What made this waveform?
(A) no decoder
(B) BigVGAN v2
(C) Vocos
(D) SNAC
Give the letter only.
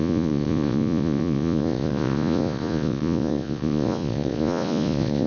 C